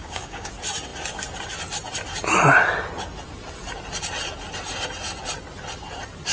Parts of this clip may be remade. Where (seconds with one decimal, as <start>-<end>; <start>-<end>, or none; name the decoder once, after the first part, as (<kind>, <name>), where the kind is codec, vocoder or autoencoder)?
0.0-0.5 (codec, DAC)